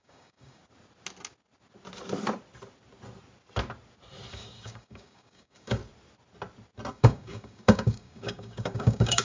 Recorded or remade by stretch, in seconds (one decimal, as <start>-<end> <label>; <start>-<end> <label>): 0.0-0.6 remade; 0.6-4.3 recorded; 4.3-5.8 remade; 5.8-6.9 recorded; 6.9-9.2 remade